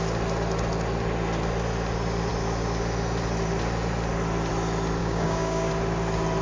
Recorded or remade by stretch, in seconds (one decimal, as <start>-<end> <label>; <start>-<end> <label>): 0.0-5.0 recorded; 5.0-5.7 remade; 5.7-6.4 recorded